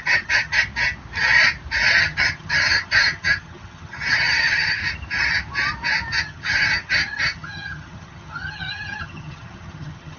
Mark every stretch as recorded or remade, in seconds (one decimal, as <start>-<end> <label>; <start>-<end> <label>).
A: 0.0-0.6 remade; 0.6-2.0 recorded; 2.0-4.8 remade; 4.8-6.2 recorded; 6.2-10.2 remade